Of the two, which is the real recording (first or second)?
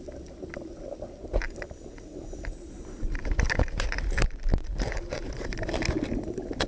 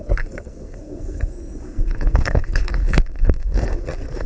first